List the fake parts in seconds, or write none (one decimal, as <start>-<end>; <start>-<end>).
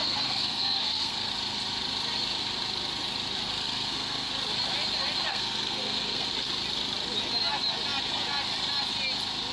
0.0-1.3; 3.4-4.3; 5.3-6.3